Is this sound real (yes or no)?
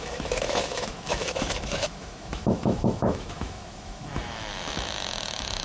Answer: no